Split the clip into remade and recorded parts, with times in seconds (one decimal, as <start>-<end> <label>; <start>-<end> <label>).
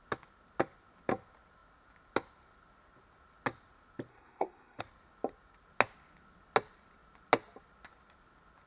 0.0-4.1 recorded; 4.1-4.8 remade; 4.8-8.7 recorded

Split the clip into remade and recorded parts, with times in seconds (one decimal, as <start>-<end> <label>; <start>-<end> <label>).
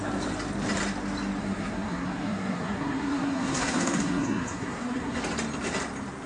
0.0-1.4 recorded; 1.4-5.2 remade; 5.2-6.3 recorded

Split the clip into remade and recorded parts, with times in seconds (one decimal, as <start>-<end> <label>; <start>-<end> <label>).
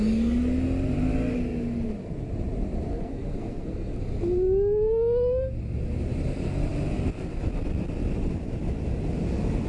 0.0-2.9 recorded; 2.9-4.0 remade; 4.0-9.7 recorded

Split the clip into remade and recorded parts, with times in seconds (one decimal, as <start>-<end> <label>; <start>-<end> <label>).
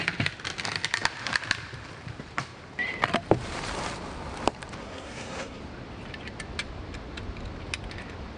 0.0-4.8 recorded; 4.8-5.6 remade; 5.6-8.4 recorded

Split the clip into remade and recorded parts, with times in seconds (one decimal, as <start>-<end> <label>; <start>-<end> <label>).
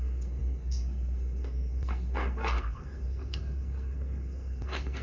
0.0-5.0 remade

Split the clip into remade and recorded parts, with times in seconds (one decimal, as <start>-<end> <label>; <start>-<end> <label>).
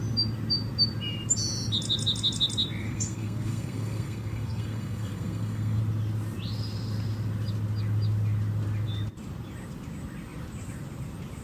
0.0-2.8 recorded; 2.8-5.8 remade; 5.8-11.4 recorded